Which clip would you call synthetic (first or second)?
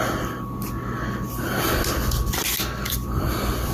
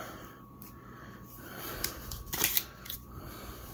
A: second